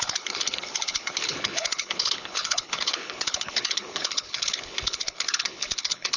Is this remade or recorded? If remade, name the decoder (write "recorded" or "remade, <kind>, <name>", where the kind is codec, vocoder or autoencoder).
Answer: remade, codec, HILCodec